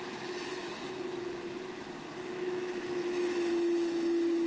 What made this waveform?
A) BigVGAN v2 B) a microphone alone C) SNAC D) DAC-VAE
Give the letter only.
D